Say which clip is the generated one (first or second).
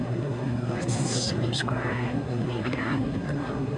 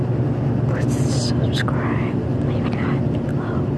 first